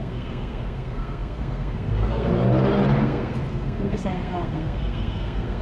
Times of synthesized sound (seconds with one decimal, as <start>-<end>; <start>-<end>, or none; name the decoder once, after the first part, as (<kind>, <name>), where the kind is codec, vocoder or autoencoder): 0.0-2.3 (codec, SNAC); 3.0-5.6